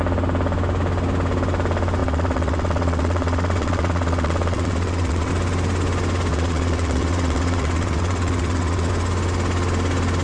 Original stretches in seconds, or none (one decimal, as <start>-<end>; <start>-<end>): 0.0-2.0; 5.3-6.3; 8.9-10.2